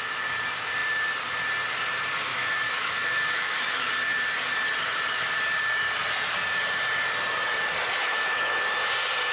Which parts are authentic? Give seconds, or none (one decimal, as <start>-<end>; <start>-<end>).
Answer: 0.0-2.3; 3.9-8.0; 8.9-9.3